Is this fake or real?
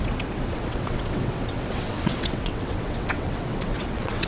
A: fake